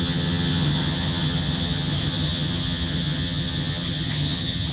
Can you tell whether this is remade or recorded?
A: remade